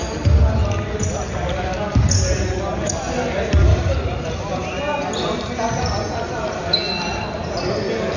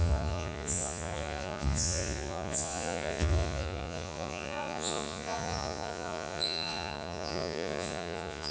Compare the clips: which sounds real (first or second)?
first